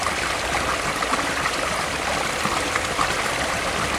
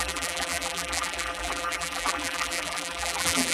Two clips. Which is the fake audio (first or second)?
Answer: second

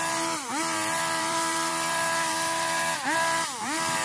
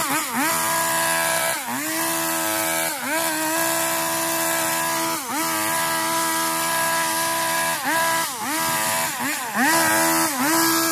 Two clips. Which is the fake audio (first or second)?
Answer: first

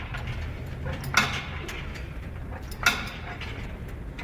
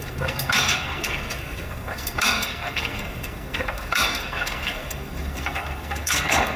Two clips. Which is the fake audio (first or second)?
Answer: second